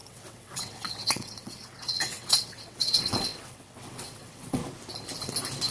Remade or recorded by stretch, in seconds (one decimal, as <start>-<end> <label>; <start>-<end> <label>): 0.0-4.6 remade; 4.6-5.7 recorded

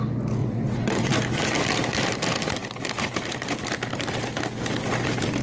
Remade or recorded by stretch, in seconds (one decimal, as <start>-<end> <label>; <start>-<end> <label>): 0.0-0.4 recorded; 0.4-1.1 remade; 1.1-5.4 recorded

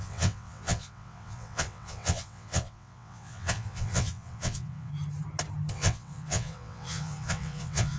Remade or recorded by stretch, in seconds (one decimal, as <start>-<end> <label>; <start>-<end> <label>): 0.0-4.9 remade; 4.9-5.7 recorded; 5.7-8.0 remade

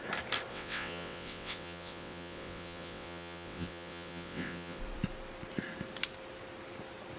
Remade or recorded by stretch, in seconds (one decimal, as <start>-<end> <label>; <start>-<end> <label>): 0.0-0.5 recorded; 0.5-4.8 remade; 4.8-7.2 recorded

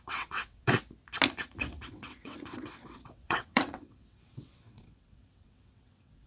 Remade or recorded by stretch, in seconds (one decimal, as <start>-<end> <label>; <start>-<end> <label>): 0.0-0.8 remade; 0.8-1.9 recorded; 1.9-6.3 remade

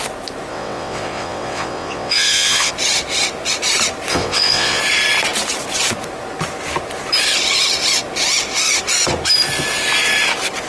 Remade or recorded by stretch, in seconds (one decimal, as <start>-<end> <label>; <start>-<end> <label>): 0.0-0.5 recorded; 0.5-2.7 remade; 2.7-4.1 recorded; 4.1-4.8 remade; 4.8-10.7 recorded

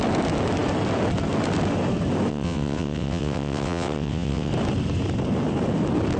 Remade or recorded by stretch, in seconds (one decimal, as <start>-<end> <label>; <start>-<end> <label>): 0.0-2.3 recorded; 2.3-4.5 remade; 4.5-6.2 recorded